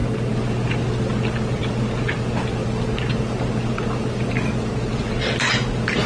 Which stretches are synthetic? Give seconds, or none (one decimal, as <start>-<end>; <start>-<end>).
none